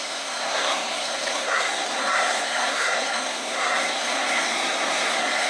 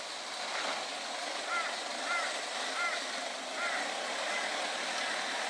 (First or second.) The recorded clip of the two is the second